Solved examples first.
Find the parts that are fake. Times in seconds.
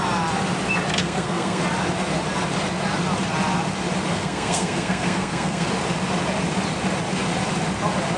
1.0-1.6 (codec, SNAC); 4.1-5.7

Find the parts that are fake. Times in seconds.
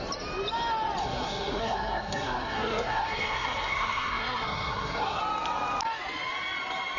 1.0-5.2 (codec, SNAC)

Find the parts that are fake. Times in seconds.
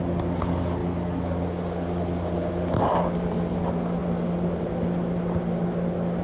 none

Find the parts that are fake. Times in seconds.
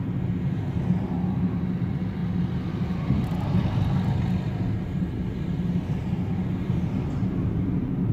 none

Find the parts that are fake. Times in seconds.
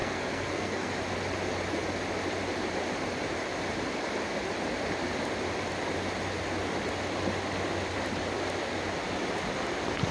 0.0-0.9 (codec, SNAC)